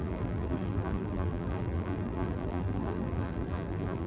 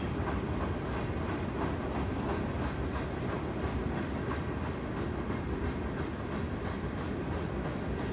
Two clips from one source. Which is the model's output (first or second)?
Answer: first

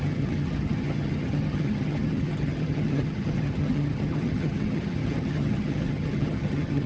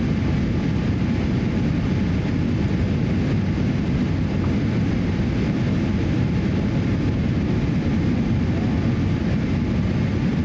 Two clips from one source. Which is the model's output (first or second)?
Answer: first